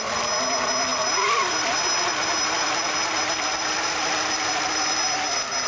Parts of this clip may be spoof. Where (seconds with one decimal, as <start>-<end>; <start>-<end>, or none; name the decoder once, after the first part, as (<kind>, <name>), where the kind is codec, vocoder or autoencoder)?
none